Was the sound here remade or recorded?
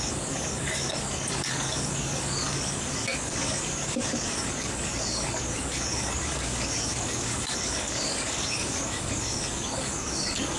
remade